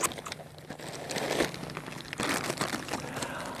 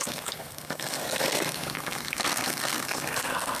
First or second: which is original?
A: first